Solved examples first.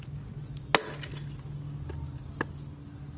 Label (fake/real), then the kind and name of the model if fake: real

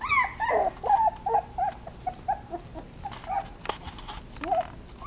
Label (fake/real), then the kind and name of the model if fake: real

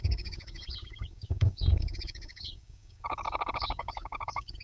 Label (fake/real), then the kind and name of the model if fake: fake, codec, DAC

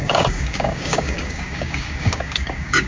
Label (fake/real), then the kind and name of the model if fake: fake, codec, DAC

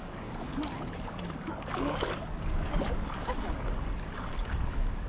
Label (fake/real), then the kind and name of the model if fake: fake, codec, DAC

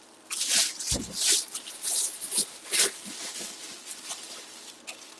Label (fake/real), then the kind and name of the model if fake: real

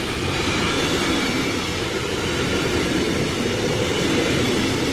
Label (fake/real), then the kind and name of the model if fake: real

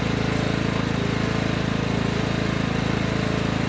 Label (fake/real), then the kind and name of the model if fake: real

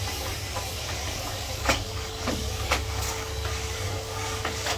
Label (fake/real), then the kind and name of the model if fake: fake, codec, DAC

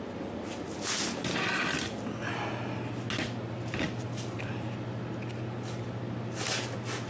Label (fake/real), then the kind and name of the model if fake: real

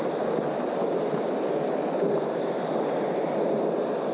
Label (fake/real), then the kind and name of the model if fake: real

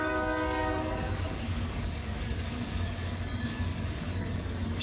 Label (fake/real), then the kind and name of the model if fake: fake, codec, DAC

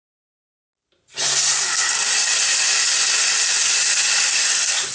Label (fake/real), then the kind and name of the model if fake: real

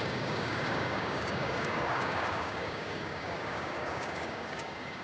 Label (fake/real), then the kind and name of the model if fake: fake, codec, DAC